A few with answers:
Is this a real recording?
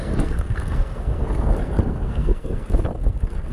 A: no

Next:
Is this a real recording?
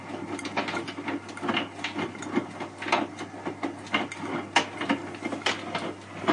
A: yes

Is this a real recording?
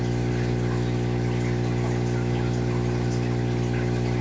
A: yes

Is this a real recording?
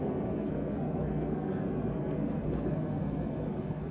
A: no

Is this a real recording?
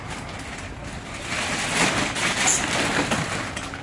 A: yes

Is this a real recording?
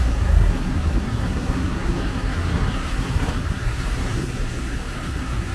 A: no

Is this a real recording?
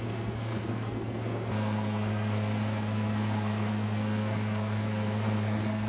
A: no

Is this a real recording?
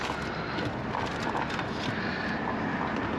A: yes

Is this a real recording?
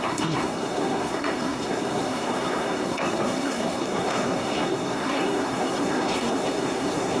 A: no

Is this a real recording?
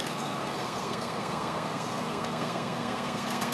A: no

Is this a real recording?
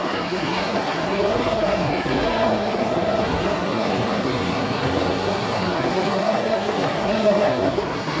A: no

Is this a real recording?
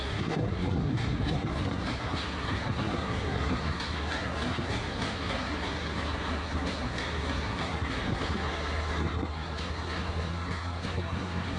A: no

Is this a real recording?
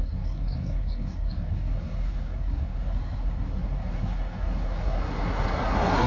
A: no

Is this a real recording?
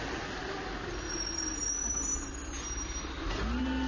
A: yes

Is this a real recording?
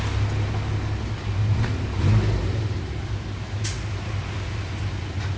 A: yes